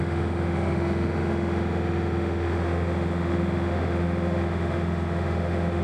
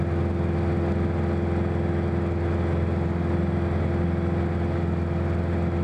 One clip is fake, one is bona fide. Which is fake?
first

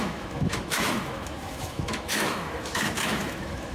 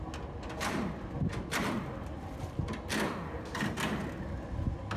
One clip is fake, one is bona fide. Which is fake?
first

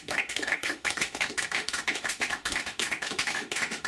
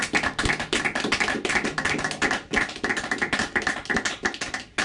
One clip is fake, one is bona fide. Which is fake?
first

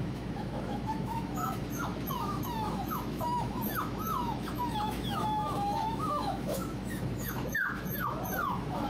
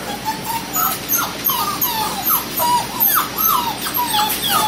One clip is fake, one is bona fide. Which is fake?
first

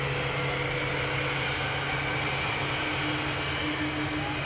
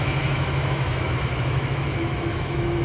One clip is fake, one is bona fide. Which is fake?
second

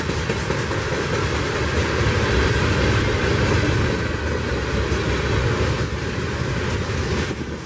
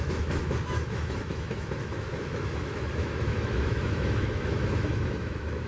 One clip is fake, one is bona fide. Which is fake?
second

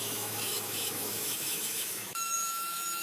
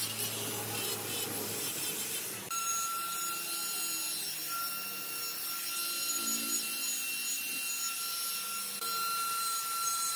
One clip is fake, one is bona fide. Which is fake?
first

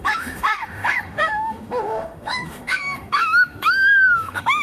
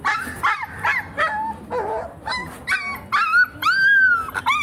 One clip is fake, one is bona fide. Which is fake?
first